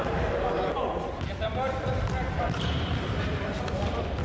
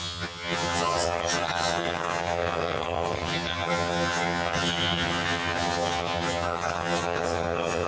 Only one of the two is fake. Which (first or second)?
second